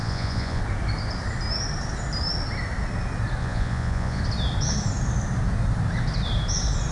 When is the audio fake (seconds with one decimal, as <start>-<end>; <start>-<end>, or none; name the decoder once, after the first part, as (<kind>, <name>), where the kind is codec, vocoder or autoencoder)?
0.0-0.6 (vocoder, Vocos); 3.4-4.2